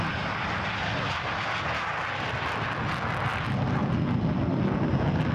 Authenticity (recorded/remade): recorded